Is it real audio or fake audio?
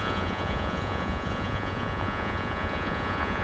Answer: fake